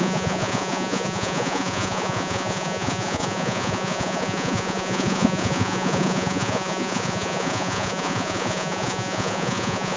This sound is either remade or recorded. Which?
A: remade